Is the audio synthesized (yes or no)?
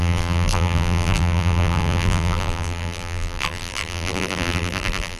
yes